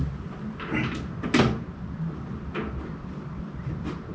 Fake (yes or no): no